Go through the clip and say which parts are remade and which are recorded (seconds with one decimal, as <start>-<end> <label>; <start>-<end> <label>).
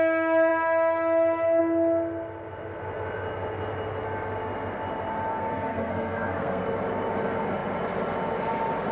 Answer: 0.0-5.3 recorded; 5.3-6.6 remade; 6.6-8.9 recorded